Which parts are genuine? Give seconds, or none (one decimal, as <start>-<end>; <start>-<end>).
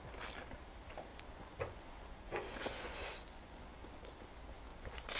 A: 0.0-1.1; 3.8-4.7